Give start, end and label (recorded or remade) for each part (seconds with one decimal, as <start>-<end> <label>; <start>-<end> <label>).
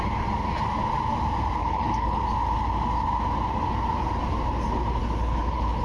0.0-1.6 recorded; 1.6-2.2 remade; 2.2-5.0 recorded; 5.0-5.8 remade